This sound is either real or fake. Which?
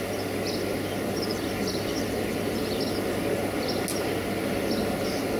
real